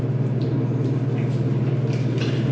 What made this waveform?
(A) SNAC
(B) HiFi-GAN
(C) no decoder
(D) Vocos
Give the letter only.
C